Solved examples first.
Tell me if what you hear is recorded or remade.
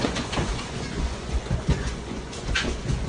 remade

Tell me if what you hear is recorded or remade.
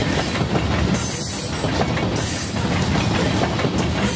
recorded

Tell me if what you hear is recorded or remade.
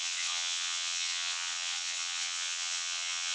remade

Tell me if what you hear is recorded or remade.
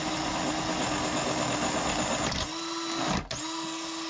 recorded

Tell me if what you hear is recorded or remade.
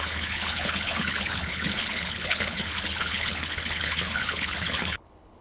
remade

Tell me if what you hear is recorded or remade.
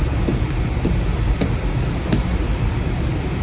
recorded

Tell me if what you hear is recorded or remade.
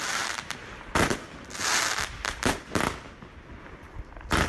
recorded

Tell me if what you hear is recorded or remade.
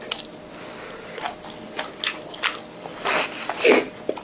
recorded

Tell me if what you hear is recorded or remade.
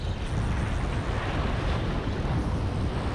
recorded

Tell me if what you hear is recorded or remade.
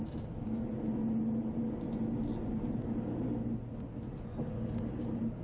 recorded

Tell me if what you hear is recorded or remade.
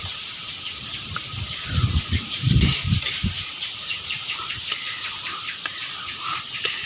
remade